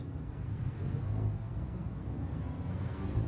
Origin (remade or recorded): remade